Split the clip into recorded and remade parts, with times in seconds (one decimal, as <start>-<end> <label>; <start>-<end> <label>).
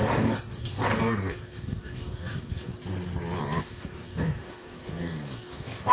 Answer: 0.0-2.7 remade; 2.7-3.6 recorded; 3.6-5.9 remade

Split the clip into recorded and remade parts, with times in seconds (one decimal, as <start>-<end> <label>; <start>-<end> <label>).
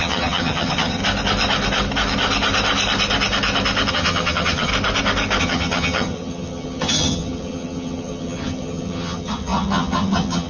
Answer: 0.0-1.0 remade; 1.0-3.9 recorded; 3.9-4.7 remade; 4.7-5.4 recorded; 5.4-10.5 remade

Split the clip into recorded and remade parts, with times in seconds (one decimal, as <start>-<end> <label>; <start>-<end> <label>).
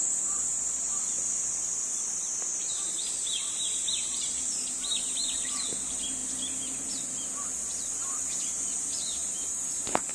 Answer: 0.0-10.1 recorded